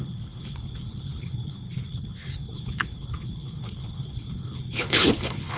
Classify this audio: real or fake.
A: fake